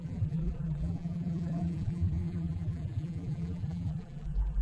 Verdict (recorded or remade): remade